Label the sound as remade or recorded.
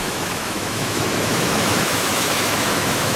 remade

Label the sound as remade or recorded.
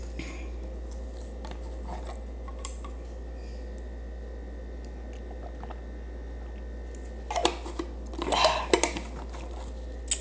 recorded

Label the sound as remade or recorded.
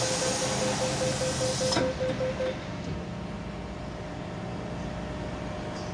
recorded